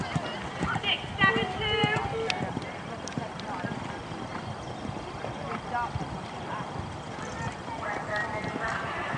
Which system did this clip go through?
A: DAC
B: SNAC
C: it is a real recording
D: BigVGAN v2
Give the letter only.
C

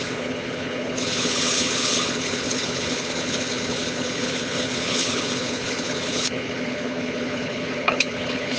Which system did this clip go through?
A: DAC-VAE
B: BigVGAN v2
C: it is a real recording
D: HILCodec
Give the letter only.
D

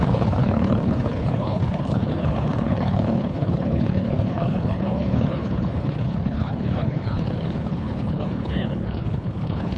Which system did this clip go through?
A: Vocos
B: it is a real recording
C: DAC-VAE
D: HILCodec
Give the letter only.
D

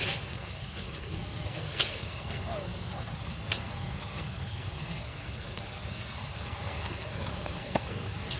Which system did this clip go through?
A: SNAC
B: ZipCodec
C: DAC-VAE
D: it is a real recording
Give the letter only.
A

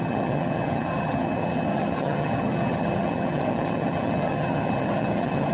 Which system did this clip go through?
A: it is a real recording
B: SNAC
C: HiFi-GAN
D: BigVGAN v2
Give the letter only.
C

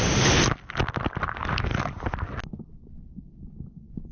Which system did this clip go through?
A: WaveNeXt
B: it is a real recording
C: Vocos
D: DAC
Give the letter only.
B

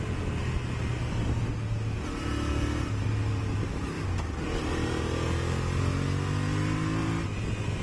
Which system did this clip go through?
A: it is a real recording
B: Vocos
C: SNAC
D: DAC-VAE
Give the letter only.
A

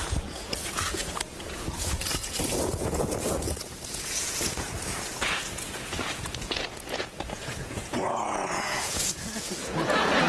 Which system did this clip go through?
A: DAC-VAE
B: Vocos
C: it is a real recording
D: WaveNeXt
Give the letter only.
B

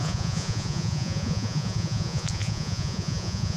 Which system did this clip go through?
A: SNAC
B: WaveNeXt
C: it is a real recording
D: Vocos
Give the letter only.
D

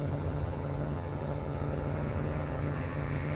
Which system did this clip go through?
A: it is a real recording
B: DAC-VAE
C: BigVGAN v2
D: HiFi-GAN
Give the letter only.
D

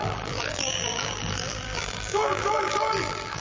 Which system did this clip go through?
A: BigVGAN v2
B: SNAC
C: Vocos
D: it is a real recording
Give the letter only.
A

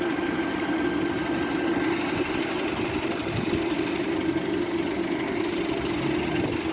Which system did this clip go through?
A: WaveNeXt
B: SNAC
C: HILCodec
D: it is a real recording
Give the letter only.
D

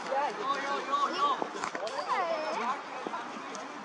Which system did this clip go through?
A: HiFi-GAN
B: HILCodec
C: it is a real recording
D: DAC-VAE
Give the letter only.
C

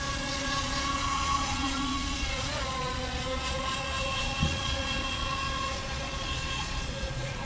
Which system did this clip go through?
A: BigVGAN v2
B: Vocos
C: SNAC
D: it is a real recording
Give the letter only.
B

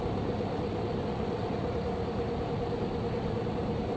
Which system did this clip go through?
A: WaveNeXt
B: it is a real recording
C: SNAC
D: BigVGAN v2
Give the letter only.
B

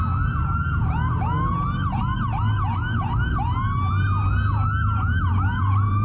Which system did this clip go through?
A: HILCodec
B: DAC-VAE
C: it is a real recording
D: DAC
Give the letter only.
C